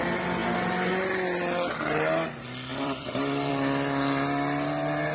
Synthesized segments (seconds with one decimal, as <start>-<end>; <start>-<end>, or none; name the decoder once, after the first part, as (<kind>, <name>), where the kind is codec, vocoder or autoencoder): 2.7-3.5 (vocoder, BigVGAN v2)